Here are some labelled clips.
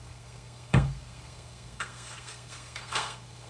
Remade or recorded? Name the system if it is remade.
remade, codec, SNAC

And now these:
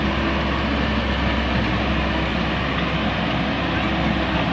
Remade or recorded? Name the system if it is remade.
recorded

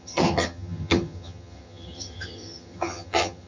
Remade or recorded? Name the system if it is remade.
remade, vocoder, HiFi-GAN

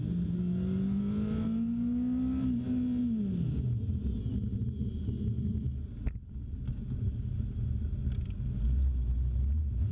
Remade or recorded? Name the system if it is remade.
recorded